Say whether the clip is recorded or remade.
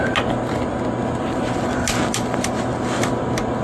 recorded